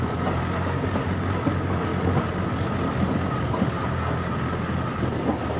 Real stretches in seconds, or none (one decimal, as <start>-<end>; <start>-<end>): 0.0-5.6